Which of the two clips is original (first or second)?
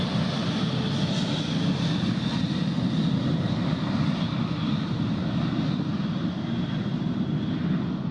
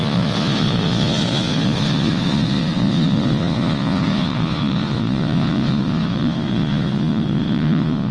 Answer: first